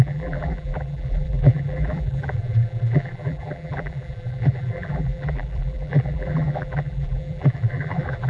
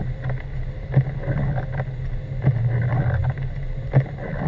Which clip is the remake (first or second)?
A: first